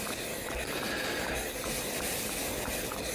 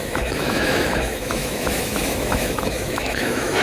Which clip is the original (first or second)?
first